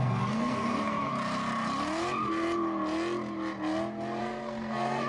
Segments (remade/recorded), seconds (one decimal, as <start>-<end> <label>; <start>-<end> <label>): 0.0-1.1 remade; 1.1-4.2 recorded; 4.2-5.1 remade